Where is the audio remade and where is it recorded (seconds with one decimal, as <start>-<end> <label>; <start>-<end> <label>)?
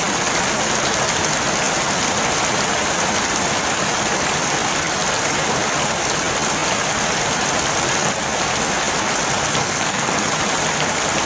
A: 0.0-9.6 recorded; 9.6-10.3 remade; 10.3-11.3 recorded